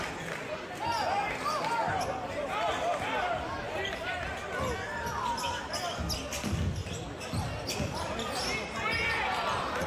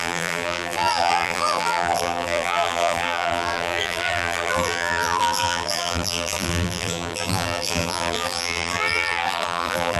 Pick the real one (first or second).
first